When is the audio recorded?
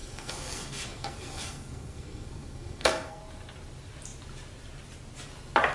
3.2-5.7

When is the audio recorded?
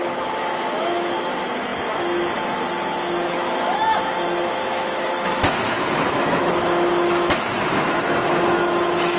none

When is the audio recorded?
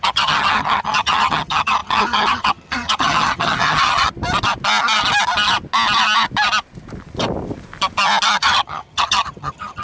4.1-8.4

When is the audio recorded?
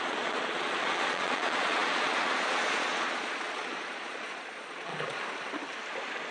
4.9-6.3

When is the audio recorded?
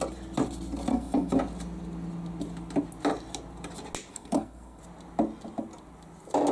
0.0-0.9; 1.4-4.1; 4.8-6.5